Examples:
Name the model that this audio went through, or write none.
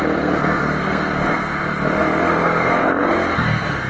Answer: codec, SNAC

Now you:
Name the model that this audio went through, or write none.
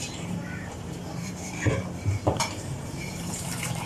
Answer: vocoder, BigVGAN v2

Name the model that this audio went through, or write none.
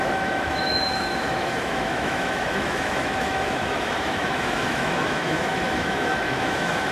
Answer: autoencoder, DAC-VAE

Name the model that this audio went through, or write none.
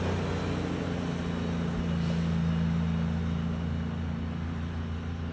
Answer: none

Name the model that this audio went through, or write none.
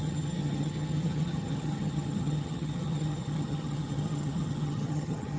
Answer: vocoder, HiFi-GAN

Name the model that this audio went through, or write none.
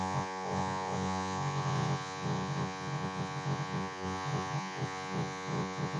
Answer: vocoder, Vocos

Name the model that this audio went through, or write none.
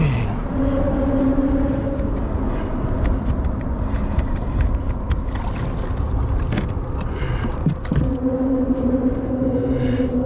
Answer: none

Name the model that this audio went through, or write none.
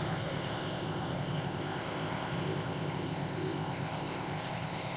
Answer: codec, ZipCodec